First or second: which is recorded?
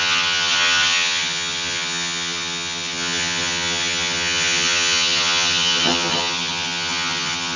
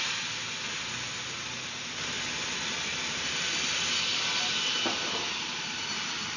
second